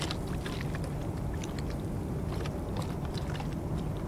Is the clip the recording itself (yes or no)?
yes